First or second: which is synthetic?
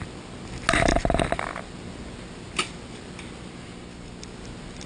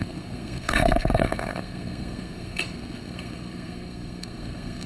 second